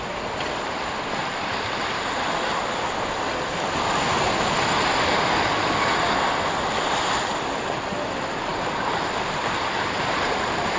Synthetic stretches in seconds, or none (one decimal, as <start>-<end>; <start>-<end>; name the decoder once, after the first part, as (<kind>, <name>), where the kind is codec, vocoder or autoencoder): none